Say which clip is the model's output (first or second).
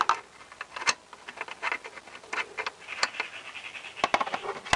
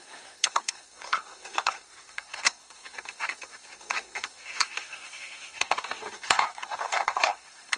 second